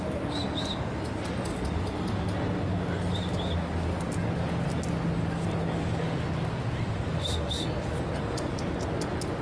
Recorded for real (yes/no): yes